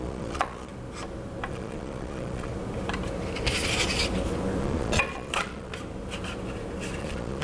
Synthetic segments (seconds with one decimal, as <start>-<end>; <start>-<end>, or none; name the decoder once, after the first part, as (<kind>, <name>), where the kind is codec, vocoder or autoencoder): 0.0-0.7 (vocoder, Vocos); 1.5-2.5; 4.6-5.7; 7.0-7.4